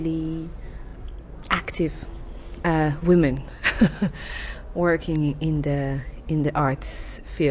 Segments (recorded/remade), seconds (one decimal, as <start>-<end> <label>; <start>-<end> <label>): 0.0-7.5 recorded